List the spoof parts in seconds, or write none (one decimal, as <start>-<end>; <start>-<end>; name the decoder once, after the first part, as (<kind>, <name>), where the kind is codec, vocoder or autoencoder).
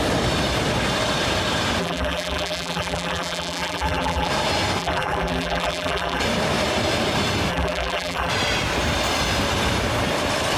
1.8-4.3 (vocoder, BigVGAN v2); 4.8-6.2; 7.5-8.3